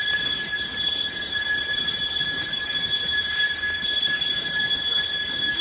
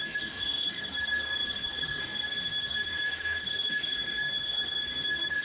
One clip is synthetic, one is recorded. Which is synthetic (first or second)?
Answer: second